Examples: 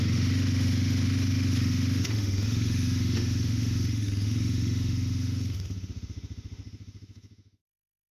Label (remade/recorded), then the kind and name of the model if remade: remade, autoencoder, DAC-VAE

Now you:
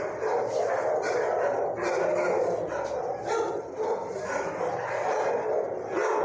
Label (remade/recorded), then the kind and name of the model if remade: recorded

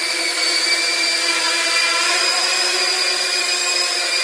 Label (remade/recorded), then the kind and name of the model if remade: recorded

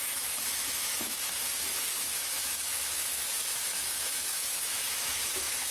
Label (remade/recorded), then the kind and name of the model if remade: remade, autoencoder, DAC-VAE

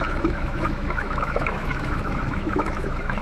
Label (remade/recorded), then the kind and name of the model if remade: remade, autoencoder, DAC-VAE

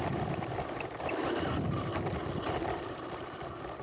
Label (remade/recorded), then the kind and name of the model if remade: recorded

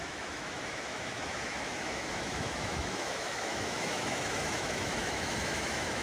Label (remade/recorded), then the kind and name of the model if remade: remade, autoencoder, DAC-VAE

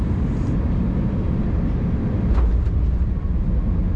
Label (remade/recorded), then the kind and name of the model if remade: recorded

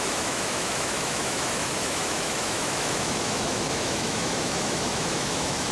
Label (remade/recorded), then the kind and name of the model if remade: remade, autoencoder, DAC-VAE